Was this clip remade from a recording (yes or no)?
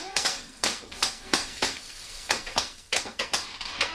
yes